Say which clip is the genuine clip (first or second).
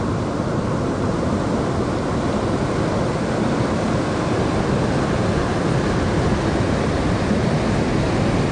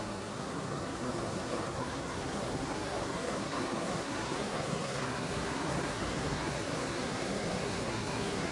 first